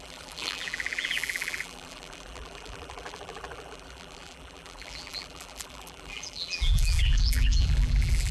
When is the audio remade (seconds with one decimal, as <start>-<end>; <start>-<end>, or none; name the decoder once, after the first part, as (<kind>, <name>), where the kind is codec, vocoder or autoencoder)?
0.0-8.3 (vocoder, BigVGAN v2)